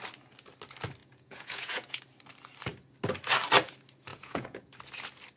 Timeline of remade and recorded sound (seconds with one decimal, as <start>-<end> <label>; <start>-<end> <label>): 0.0-1.0 recorded; 1.0-2.0 remade; 2.0-4.1 recorded; 4.1-4.6 remade; 4.6-5.4 recorded